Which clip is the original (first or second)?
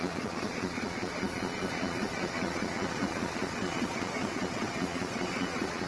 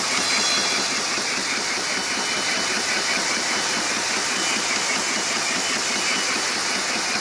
second